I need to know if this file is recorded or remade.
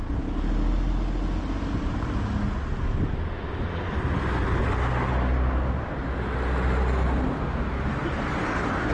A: recorded